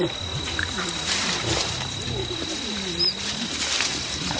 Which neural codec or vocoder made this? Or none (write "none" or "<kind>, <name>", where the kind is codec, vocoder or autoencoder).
vocoder, BigVGAN v2